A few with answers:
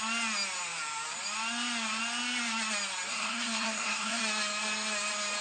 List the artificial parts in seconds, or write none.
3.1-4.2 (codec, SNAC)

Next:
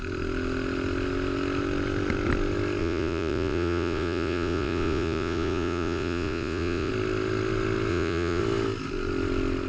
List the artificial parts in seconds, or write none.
2.8-6.9 (vocoder, Vocos); 7.9-8.4

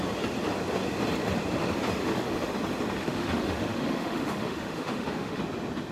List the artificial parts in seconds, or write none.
2.0-2.5 (autoencoder, DAC-VAE); 3.0-5.4

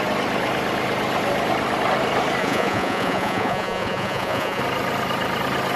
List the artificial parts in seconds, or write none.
2.4-4.6 (vocoder, Vocos)